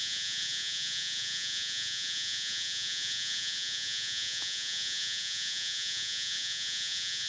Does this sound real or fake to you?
fake